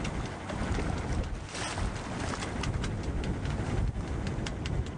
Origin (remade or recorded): recorded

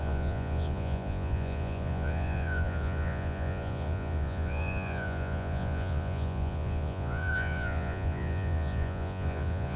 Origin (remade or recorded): remade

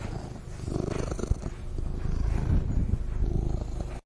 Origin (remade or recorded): recorded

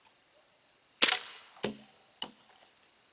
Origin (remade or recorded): recorded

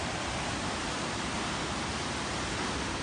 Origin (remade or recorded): recorded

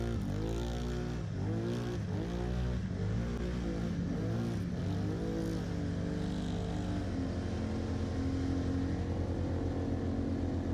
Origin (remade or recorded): recorded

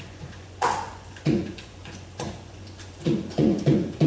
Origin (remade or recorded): remade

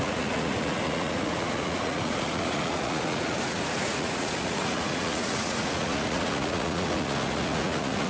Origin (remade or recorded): remade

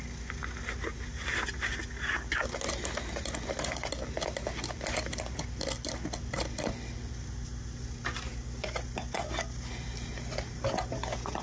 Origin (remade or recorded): recorded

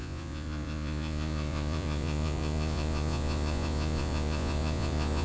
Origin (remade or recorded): remade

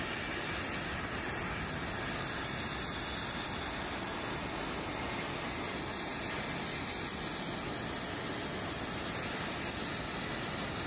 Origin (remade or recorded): recorded